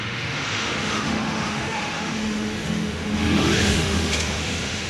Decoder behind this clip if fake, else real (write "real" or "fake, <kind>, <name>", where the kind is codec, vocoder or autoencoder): fake, autoencoder, DAC-VAE